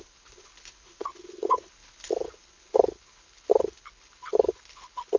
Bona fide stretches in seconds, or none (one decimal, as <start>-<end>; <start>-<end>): none